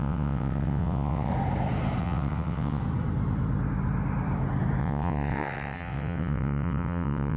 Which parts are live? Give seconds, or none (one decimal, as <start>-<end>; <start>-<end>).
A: 1.3-2.0; 2.8-4.8